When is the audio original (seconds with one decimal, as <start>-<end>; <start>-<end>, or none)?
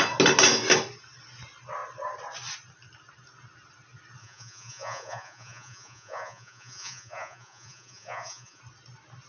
0.0-4.2; 8.6-9.3